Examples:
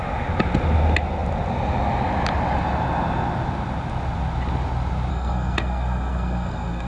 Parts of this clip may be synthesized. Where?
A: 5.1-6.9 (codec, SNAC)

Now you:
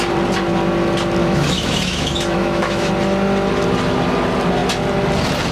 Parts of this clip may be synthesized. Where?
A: 1.2-2.9 (autoencoder, DAC-VAE)

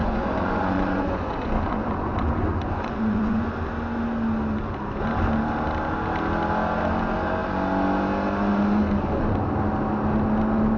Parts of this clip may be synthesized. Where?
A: 0.0-3.5 (vocoder, Vocos)

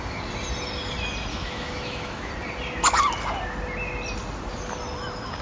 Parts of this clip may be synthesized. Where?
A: 1.3-2.3 (autoencoder, DAC-VAE)

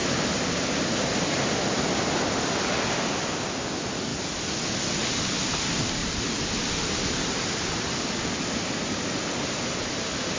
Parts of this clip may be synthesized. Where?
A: none

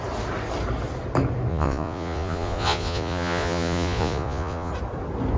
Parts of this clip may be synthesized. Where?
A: 1.5-4.7 (vocoder, Vocos)

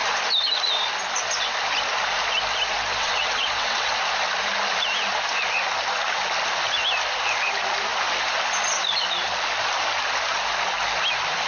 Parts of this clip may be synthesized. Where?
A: 3.0-3.9 (vocoder, WaveNeXt)